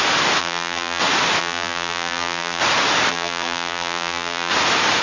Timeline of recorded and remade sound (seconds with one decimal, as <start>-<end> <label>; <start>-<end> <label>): 0.0-0.4 recorded; 0.4-1.0 remade; 1.0-1.4 recorded; 1.4-2.6 remade; 2.6-3.1 recorded; 3.1-4.5 remade; 4.5-5.0 recorded